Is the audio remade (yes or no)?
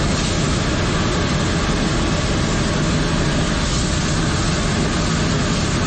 no